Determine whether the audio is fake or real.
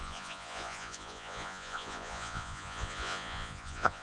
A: fake